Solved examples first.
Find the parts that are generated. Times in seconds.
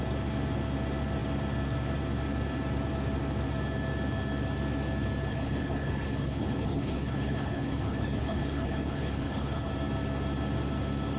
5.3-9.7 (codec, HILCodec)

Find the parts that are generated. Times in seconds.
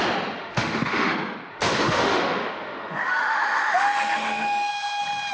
0.4-1.1 (autoencoder, DAC-VAE); 1.5-4.7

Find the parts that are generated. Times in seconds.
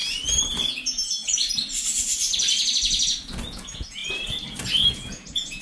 0.7-1.2 (vocoder, Vocos); 3.5-4.0; 4.9-5.6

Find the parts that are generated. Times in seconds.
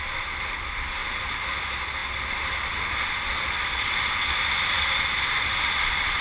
1.0-1.5 (vocoder, BigVGAN v2)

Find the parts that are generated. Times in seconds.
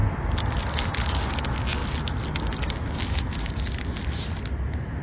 none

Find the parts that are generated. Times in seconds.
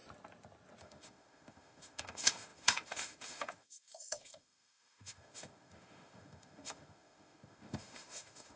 0.8-8.6 (autoencoder, DAC-VAE)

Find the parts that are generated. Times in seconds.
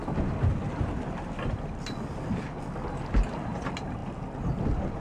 none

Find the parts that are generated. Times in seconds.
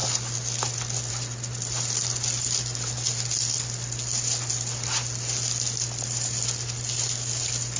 none